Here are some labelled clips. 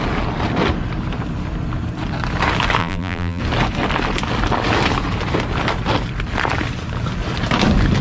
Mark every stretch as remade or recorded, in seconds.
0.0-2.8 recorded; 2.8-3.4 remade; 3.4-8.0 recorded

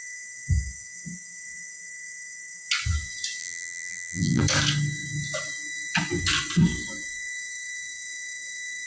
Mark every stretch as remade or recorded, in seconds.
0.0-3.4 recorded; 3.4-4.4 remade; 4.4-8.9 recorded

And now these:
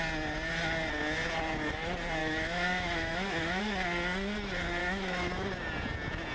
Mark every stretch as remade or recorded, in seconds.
0.0-2.2 recorded; 2.2-3.6 remade; 3.6-4.8 recorded; 4.8-5.3 remade; 5.3-6.3 recorded